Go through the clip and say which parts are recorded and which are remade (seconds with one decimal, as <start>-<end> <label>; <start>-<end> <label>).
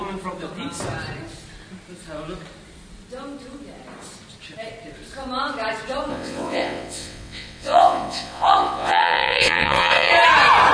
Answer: 0.0-6.1 recorded; 6.1-10.1 remade; 10.1-10.7 recorded